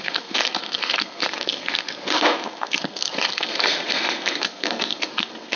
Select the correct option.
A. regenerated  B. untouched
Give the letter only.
A